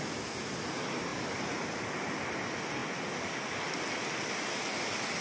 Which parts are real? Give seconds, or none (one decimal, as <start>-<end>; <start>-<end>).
0.0-5.2